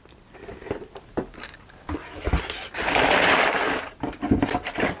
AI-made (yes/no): no